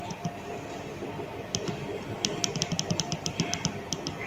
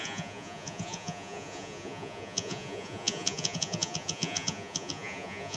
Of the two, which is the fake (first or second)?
second